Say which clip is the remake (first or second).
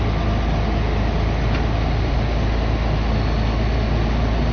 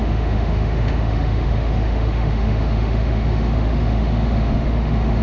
second